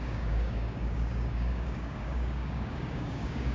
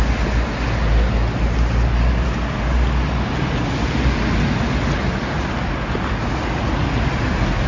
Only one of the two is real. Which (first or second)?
second